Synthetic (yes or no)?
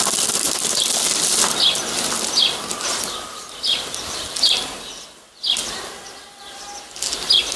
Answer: no